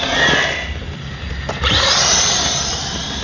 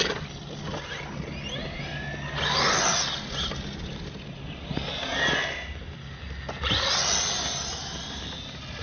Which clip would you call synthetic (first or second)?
first